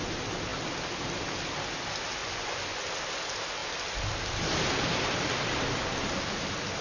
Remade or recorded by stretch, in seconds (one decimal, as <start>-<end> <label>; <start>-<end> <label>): 0.0-2.2 recorded; 2.2-2.8 remade; 2.8-6.8 recorded